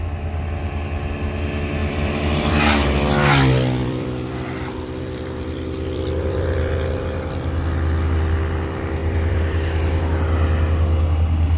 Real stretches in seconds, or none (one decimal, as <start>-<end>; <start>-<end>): 0.0-1.8; 2.6-3.8; 7.3-9.0; 10.0-11.6